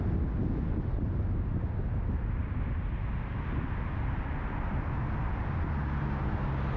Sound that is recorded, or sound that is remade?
recorded